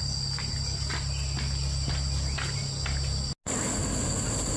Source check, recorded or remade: recorded